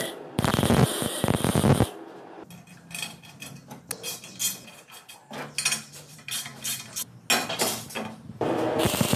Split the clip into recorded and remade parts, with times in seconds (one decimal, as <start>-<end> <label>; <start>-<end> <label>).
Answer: 0.0-3.6 remade; 3.6-5.9 recorded; 5.9-6.5 remade; 6.5-8.4 recorded; 8.4-9.2 remade